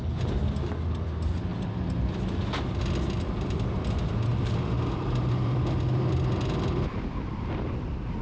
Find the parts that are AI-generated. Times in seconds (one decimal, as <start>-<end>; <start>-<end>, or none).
1.5-2.7; 4.3-6.9